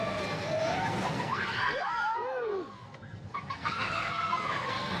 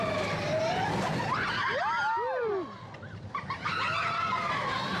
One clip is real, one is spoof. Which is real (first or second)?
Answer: second